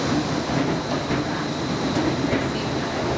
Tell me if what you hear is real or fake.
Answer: real